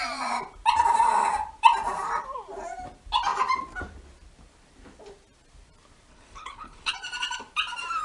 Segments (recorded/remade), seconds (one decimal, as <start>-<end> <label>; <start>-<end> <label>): 0.0-6.1 recorded; 6.1-6.9 remade; 6.9-8.0 recorded